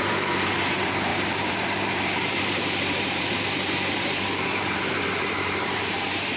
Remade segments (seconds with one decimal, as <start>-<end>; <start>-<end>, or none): 0.0-6.4